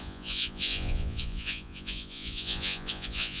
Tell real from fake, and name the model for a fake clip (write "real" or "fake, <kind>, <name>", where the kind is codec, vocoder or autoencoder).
fake, vocoder, Vocos